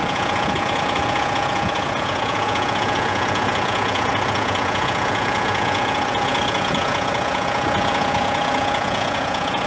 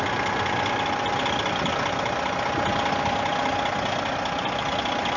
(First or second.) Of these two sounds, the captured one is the second